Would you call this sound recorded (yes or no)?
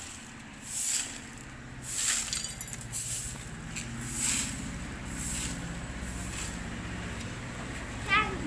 yes